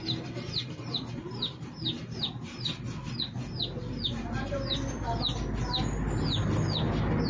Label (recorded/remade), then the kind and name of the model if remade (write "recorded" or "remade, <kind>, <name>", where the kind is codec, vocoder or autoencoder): recorded